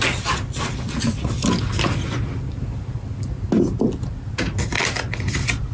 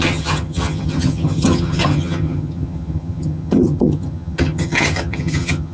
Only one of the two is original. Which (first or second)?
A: first